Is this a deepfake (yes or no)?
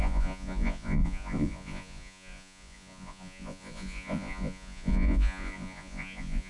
yes